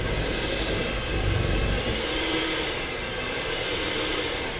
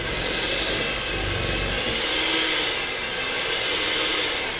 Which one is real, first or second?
second